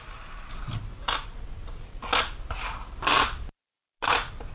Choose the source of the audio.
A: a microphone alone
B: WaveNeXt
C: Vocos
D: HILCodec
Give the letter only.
A